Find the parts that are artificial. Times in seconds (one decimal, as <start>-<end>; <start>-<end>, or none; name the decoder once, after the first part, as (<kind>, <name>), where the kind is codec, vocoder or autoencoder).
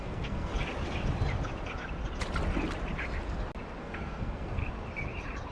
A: 0.0-0.5 (codec, SNAC); 3.8-4.6